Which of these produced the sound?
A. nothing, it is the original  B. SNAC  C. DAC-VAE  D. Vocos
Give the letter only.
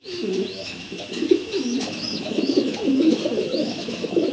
C